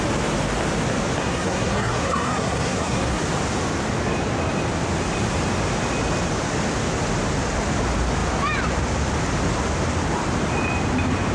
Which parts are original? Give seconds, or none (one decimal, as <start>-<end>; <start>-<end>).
0.0-1.2; 3.2-11.3